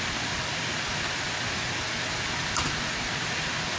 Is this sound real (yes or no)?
yes